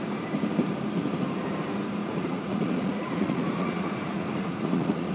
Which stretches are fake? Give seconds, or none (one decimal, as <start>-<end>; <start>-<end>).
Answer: 2.0-5.1